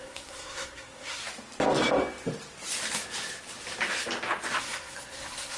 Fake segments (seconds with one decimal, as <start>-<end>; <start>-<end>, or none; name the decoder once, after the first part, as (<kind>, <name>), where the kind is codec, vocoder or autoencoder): 0.0-1.2 (codec, SNAC); 4.6-5.6